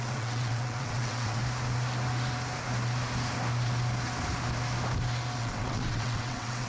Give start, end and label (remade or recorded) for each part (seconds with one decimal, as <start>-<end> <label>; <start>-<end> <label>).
0.0-1.4 remade; 1.4-5.4 recorded; 5.4-6.7 remade